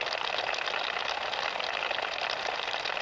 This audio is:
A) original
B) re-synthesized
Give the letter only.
A